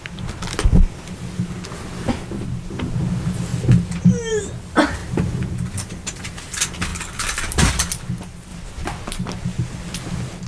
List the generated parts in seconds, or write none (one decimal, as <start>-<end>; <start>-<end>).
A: 5.0-6.2